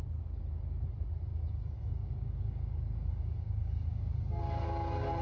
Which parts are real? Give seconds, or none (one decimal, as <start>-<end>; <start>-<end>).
0.0-1.3; 4.4-5.2